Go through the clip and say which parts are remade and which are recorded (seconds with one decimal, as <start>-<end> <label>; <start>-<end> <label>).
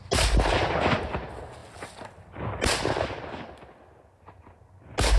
0.0-5.2 recorded